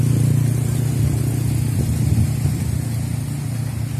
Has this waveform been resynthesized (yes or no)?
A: no